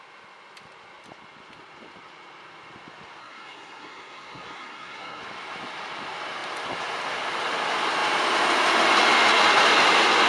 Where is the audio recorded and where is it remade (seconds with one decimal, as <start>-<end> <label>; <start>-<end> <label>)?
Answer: 0.0-3.2 recorded; 3.2-5.2 remade; 5.2-10.3 recorded